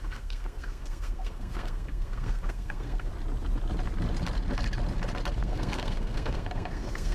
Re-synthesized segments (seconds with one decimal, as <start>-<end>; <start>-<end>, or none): 0.0-3.1; 5.4-7.1